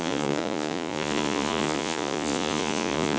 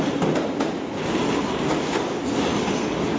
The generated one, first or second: first